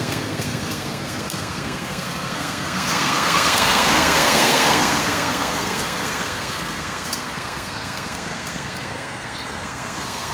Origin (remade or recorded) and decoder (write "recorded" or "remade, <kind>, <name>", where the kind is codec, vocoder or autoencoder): remade, codec, SNAC